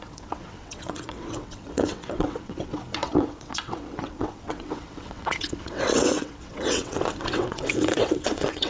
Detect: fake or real fake